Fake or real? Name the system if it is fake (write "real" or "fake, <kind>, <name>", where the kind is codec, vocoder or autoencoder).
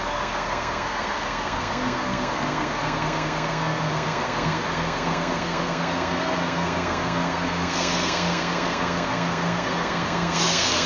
fake, codec, SNAC